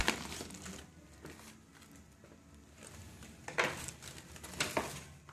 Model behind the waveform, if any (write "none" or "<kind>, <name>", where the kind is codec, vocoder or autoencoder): none